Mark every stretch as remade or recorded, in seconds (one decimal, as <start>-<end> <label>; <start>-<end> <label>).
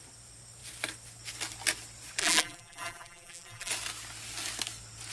0.0-2.2 recorded; 2.2-3.7 remade; 3.7-5.1 recorded